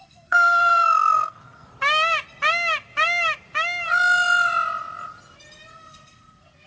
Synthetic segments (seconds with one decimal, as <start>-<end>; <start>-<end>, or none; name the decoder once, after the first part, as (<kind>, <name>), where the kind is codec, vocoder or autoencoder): 0.0-1.7 (codec, SNAC); 5.7-6.7